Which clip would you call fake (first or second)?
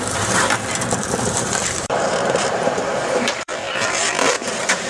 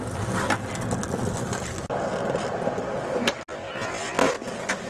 first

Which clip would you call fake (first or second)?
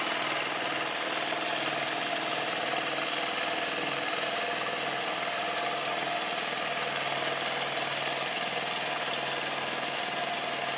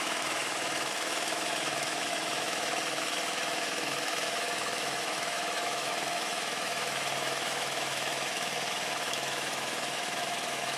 second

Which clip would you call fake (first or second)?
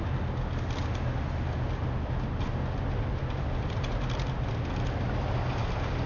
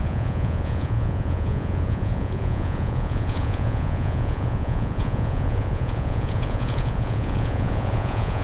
second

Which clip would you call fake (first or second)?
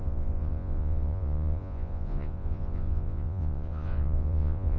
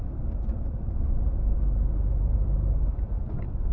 first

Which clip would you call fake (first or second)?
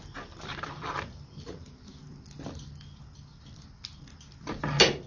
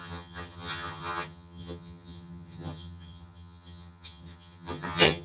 second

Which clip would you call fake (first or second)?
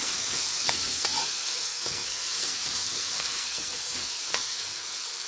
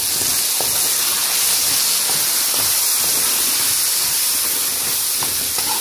first